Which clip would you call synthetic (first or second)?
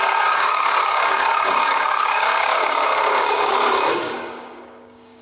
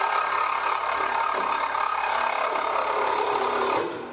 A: first